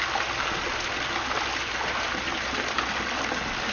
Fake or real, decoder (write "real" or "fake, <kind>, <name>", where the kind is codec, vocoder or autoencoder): real